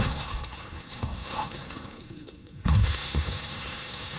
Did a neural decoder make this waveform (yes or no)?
yes